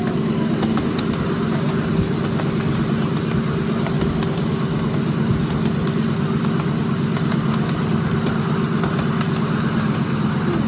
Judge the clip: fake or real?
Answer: real